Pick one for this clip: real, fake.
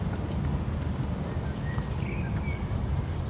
real